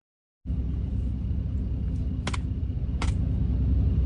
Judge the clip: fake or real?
real